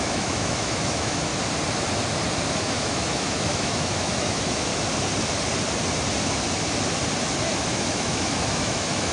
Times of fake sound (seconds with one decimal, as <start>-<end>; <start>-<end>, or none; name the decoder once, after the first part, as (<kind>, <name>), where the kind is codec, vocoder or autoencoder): 0.0-1.3 (autoencoder, DAC-VAE); 2.6-4.7; 7.7-9.1